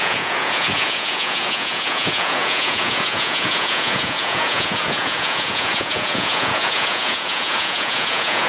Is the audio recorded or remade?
remade